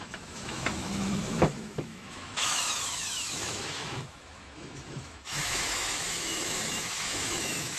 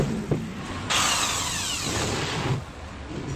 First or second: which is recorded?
second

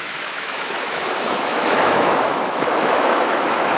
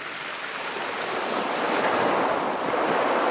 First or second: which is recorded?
second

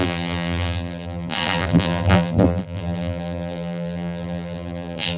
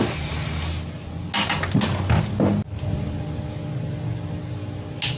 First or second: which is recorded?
second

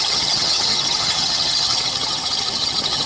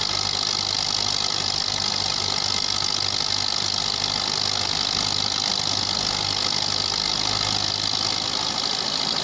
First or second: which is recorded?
second